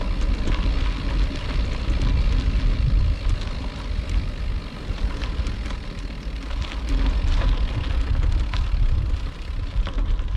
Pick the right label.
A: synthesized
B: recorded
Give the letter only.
B